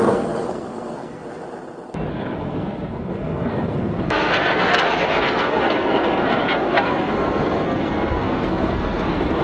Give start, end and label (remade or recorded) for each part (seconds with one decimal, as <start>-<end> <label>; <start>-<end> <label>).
0.0-1.2 remade; 1.2-2.1 recorded; 2.1-9.4 remade